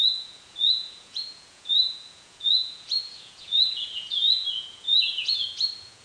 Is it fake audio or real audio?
fake